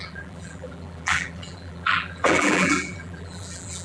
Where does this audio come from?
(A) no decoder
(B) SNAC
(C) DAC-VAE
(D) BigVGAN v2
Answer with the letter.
D